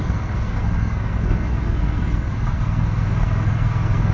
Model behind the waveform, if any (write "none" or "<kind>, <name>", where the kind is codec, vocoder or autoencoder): codec, SNAC